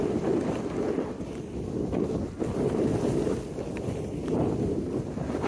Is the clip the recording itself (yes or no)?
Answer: yes